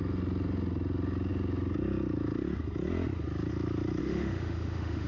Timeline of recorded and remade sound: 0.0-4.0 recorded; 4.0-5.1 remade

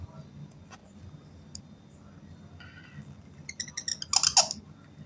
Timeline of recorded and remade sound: 0.0-5.1 recorded

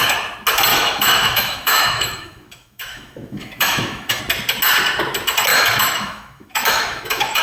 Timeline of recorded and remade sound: 0.0-0.7 recorded; 0.7-4.2 remade; 4.2-5.5 recorded; 5.5-7.4 remade

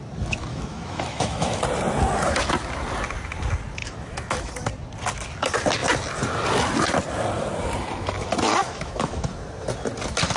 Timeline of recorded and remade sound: 0.0-0.5 recorded; 0.5-1.6 remade; 1.6-3.8 recorded; 3.8-4.5 remade; 4.5-8.6 recorded; 8.6-9.3 remade; 9.3-10.4 recorded

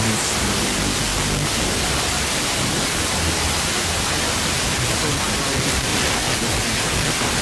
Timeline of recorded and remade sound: 0.0-7.4 recorded

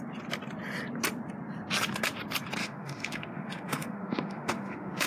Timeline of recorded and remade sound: 0.0-2.6 recorded; 2.6-5.1 remade

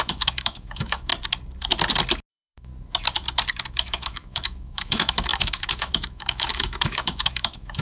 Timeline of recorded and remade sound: 0.0-1.1 remade; 1.1-2.3 recorded; 2.3-2.7 remade; 2.7-3.7 recorded; 3.7-7.8 remade

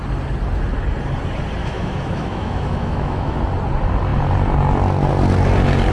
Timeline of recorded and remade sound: 0.0-1.6 recorded; 1.6-3.4 remade; 3.4-5.9 recorded